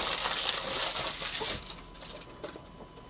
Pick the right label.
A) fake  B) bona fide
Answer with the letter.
B